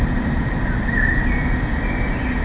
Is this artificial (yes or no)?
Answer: no